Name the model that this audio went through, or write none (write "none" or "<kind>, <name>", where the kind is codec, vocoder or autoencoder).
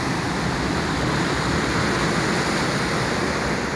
none